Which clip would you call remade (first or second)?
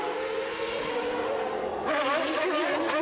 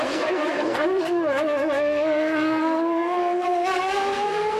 second